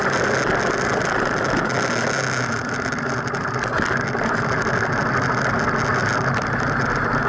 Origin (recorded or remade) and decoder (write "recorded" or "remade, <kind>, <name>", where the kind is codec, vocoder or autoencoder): recorded